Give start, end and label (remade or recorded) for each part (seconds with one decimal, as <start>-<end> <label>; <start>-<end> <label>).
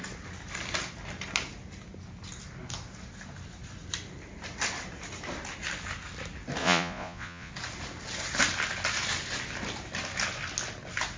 0.0-6.6 recorded; 6.6-7.5 remade; 7.5-11.2 recorded